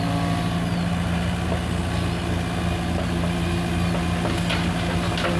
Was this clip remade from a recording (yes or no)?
no